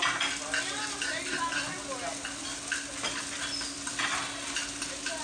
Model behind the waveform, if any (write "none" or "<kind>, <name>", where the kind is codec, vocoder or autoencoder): none